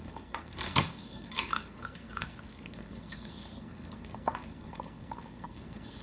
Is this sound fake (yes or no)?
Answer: yes